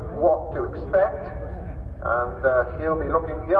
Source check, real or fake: fake